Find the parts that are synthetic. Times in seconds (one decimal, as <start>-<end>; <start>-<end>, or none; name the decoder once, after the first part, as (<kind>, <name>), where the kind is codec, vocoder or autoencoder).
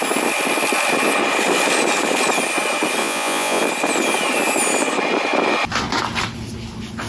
3.0-3.6 (vocoder, Vocos)